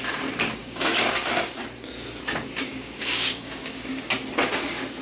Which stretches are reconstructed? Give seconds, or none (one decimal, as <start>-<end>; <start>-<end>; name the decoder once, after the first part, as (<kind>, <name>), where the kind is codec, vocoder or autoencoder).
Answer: 0.6-1.6 (codec, DAC); 2.7-3.9